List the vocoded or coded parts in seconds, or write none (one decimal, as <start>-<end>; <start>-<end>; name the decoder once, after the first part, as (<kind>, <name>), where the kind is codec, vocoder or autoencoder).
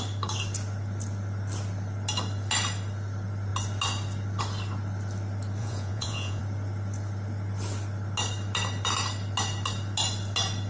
5.6-6.4 (vocoder, Vocos)